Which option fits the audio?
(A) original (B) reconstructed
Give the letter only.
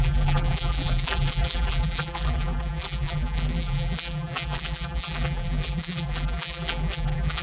B